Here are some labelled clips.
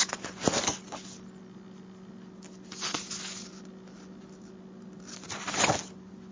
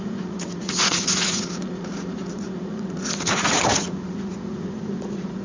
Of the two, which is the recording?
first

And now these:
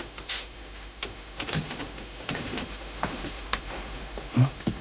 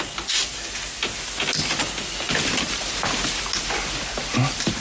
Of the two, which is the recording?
second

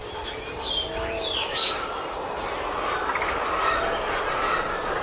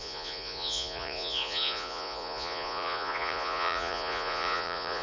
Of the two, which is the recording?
first